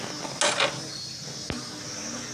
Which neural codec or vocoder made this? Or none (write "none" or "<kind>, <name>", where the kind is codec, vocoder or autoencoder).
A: none